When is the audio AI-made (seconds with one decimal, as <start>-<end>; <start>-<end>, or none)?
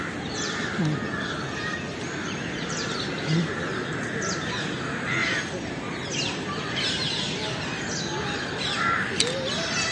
none